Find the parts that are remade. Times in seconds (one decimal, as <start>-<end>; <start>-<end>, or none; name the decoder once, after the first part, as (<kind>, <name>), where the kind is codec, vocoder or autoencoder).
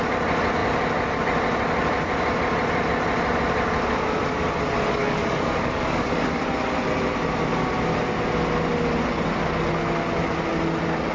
5.0-6.4 (codec, DAC)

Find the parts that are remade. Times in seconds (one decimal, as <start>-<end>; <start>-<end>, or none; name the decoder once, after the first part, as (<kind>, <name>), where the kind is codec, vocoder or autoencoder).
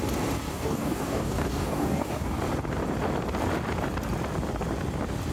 0.5-2.4 (codec, DAC)